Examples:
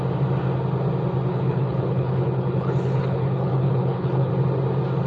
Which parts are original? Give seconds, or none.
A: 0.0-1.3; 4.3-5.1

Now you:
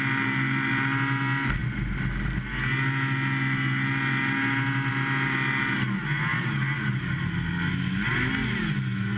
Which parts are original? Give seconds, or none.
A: 0.0-9.2